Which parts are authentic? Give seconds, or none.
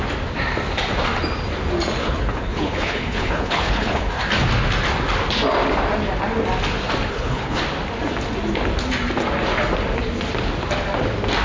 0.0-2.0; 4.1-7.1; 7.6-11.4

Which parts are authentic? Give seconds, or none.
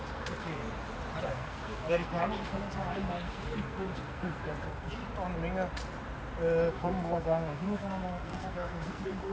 0.6-1.2; 5.0-6.7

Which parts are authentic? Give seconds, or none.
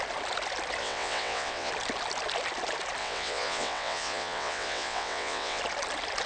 0.0-0.8; 1.7-3.0; 5.6-6.3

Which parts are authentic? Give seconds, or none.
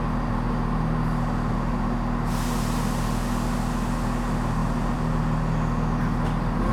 0.0-4.6; 5.2-6.7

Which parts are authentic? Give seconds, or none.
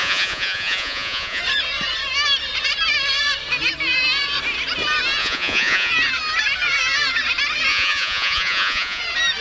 1.4-5.2; 5.9-7.7; 9.0-9.4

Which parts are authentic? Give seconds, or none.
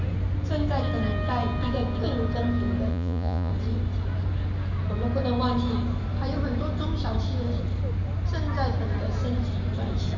0.0-2.9; 3.5-10.2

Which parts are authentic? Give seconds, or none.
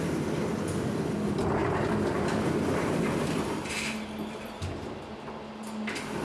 0.0-1.6; 5.3-6.2